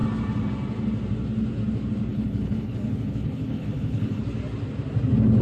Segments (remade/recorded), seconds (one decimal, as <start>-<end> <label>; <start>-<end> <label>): 0.0-2.1 recorded; 2.1-4.2 remade; 4.2-5.4 recorded

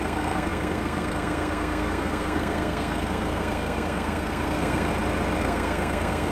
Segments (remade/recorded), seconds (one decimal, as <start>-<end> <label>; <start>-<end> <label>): 0.0-4.9 remade; 4.9-5.4 recorded; 5.4-6.3 remade

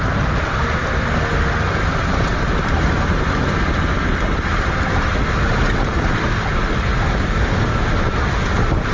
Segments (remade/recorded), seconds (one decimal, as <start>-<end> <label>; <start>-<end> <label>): 0.0-8.9 recorded

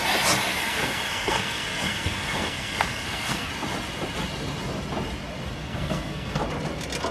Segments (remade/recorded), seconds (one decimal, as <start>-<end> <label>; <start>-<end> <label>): 0.0-0.5 recorded; 0.5-3.5 remade; 3.5-5.6 recorded; 5.6-6.4 remade; 6.4-7.1 recorded